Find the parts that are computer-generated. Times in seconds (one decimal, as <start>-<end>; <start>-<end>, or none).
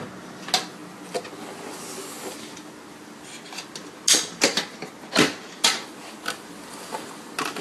none